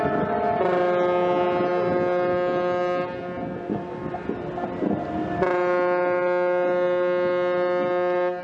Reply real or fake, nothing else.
real